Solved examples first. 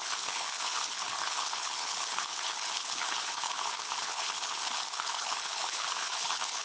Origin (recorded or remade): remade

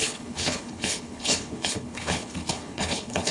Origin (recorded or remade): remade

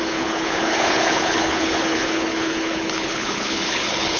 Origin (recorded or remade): remade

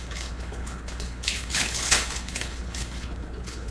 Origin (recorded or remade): remade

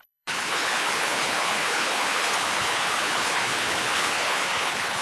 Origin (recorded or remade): remade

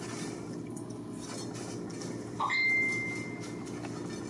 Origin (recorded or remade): recorded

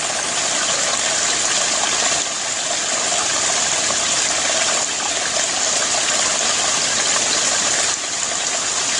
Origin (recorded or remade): recorded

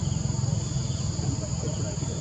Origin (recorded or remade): recorded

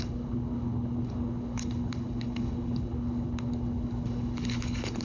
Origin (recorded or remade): remade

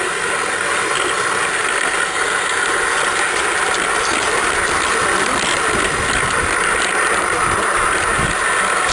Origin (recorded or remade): recorded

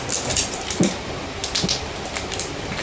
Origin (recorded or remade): recorded